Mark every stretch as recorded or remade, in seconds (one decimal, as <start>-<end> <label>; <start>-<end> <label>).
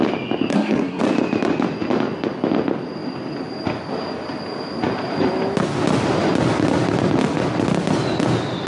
0.0-0.5 recorded; 0.5-1.0 remade; 1.0-8.7 recorded